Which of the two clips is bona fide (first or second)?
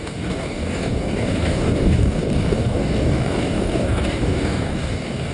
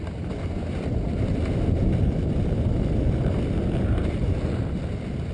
second